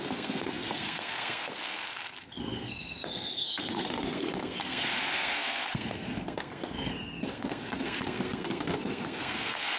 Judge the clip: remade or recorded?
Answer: remade